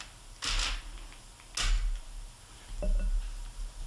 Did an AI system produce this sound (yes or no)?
no